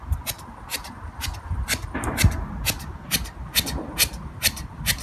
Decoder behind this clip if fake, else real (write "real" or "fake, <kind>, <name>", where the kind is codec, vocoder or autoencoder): real